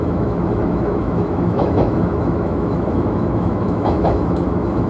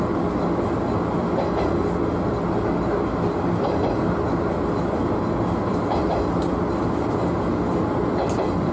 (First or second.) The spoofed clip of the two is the first